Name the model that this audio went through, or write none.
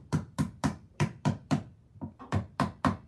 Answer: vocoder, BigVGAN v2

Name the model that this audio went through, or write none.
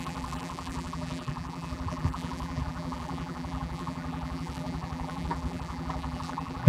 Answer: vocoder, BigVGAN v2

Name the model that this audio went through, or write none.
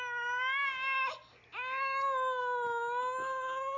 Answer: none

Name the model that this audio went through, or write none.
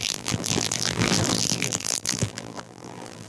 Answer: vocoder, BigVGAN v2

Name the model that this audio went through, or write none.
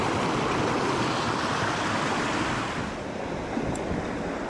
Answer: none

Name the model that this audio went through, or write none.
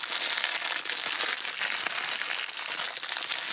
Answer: none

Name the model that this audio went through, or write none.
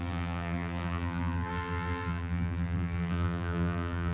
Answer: vocoder, BigVGAN v2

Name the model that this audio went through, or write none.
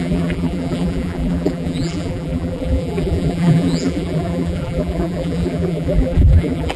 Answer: vocoder, BigVGAN v2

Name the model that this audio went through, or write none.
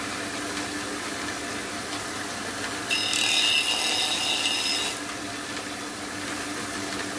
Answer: none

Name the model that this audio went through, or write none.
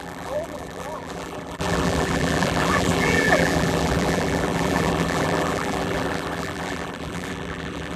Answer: vocoder, BigVGAN v2